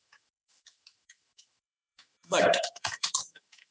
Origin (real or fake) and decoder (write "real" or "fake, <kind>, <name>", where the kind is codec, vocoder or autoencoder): fake, autoencoder, DAC-VAE